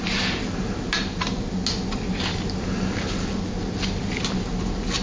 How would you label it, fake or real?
real